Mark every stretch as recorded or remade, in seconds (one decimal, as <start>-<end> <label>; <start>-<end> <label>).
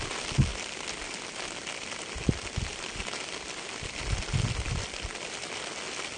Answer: 0.0-6.2 recorded